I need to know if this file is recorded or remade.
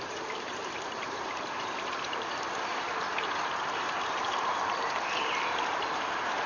remade